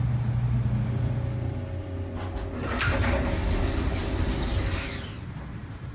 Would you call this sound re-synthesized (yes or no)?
no